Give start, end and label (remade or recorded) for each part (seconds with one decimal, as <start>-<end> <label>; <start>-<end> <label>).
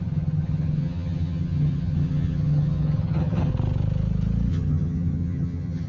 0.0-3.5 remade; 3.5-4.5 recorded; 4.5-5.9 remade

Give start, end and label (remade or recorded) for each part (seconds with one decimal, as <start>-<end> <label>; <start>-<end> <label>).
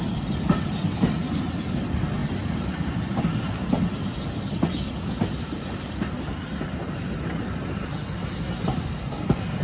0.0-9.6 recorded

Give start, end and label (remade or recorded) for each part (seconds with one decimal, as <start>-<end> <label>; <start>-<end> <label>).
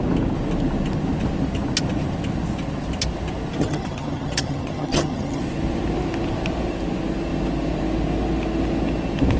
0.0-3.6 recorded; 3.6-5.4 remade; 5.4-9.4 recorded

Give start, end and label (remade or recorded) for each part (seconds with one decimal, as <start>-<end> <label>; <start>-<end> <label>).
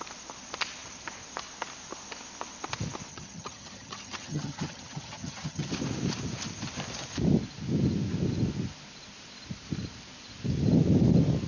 0.0-3.1 recorded; 3.1-5.7 remade; 5.7-11.5 recorded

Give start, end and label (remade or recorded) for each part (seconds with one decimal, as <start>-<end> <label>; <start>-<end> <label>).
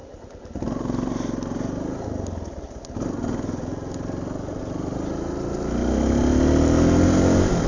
0.0-7.7 recorded